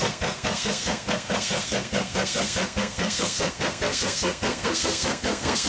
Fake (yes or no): yes